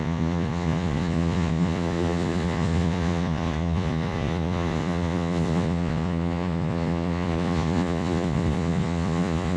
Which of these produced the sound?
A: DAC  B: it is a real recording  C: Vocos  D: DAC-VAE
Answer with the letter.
C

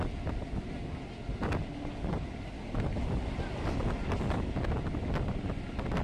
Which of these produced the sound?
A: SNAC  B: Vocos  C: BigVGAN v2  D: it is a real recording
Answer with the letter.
D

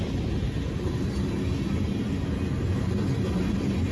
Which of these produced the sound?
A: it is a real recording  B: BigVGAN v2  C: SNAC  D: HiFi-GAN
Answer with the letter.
A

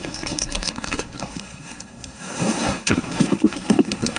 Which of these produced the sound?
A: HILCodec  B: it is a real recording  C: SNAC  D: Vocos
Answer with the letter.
C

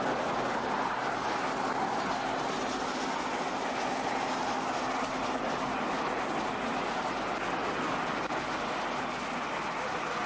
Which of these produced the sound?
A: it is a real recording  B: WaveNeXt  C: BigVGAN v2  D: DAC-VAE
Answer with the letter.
A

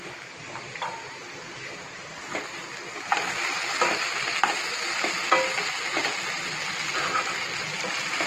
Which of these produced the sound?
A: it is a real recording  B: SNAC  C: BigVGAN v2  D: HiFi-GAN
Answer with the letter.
A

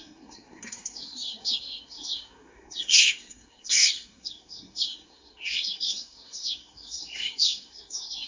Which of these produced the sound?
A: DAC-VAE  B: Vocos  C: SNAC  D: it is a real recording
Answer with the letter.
C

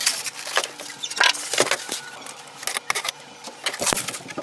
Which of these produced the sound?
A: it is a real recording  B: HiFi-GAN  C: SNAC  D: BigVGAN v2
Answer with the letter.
A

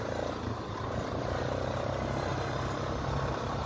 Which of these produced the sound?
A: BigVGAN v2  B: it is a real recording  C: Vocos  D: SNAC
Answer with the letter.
A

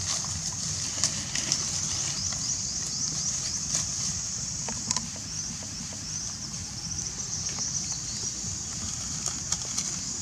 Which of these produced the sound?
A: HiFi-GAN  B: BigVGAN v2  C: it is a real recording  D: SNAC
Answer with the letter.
C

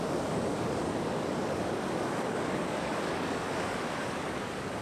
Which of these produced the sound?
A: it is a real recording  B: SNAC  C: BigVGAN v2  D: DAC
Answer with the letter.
D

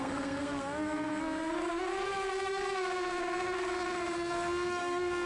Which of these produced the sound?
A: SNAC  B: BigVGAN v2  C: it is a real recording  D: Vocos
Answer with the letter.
A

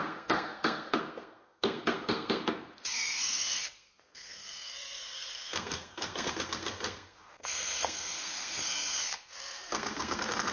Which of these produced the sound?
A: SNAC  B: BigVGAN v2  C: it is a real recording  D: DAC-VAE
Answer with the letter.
A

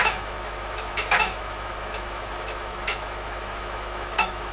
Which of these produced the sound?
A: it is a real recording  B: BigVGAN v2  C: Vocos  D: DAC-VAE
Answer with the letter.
D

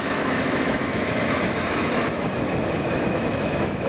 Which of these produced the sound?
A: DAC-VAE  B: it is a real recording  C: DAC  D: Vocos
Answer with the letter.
A